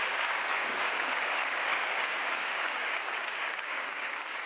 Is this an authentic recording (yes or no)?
no